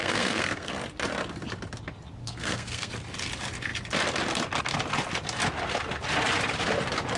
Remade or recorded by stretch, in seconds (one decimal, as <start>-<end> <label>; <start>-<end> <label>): 0.0-0.7 remade; 0.7-2.2 recorded; 2.2-2.9 remade; 2.9-7.2 recorded